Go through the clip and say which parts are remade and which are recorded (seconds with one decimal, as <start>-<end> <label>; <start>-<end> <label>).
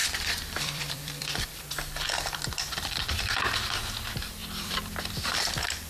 0.0-3.2 remade; 3.2-4.4 recorded; 4.4-5.5 remade; 5.5-5.9 recorded